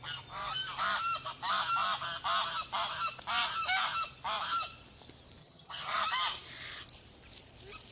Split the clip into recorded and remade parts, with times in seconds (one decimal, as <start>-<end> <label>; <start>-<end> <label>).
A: 0.0-5.4 recorded; 5.4-6.0 remade; 6.0-7.9 recorded